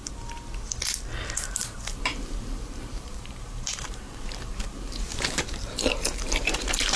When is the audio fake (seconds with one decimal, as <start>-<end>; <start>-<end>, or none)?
1.5-7.0